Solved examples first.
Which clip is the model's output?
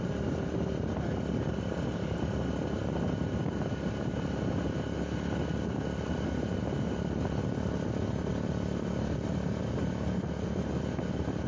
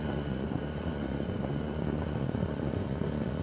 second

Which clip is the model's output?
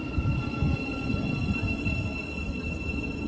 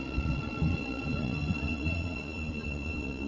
second